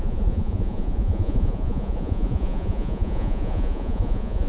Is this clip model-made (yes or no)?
yes